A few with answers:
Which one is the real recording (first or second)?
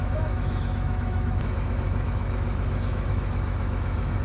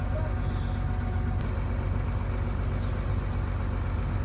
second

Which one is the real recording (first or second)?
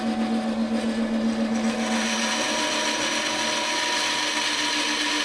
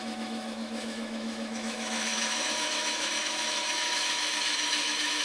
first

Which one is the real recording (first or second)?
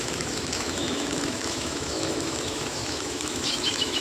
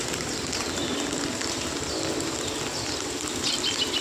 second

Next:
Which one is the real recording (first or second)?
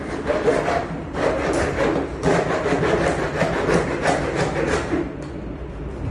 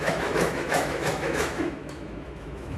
first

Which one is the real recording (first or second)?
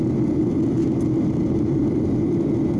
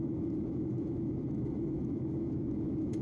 first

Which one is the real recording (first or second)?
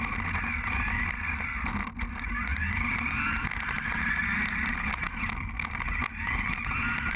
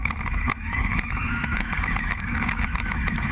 first